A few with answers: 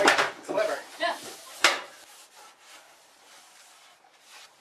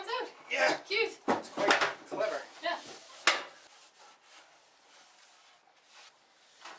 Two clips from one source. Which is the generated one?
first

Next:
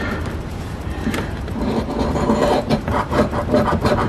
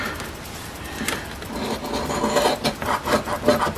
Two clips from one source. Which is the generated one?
first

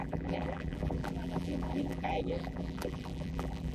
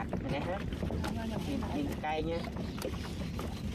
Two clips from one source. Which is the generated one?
first